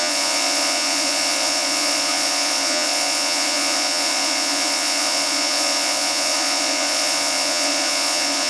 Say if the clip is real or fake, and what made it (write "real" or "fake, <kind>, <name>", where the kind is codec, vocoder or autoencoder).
fake, vocoder, Vocos